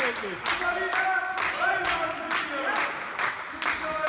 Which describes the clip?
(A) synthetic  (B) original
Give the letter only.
B